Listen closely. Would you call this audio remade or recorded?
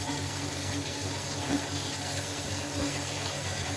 remade